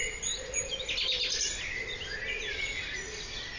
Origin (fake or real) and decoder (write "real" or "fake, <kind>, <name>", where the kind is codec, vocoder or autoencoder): real